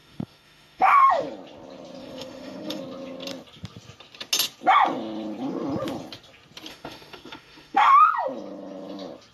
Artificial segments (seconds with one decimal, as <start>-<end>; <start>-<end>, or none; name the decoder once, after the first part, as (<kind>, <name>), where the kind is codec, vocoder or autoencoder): 0.0-1.1 (autoencoder, DAC-VAE); 2.0-2.8; 6.7-8.1